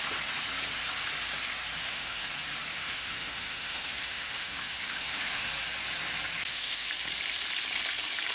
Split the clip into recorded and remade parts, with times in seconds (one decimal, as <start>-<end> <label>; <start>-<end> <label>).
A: 0.0-1.8 recorded; 1.8-2.3 remade; 2.3-2.7 recorded; 2.7-5.5 remade; 5.5-6.4 recorded; 6.4-6.9 remade; 6.9-8.3 recorded